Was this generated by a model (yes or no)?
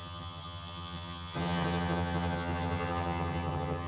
yes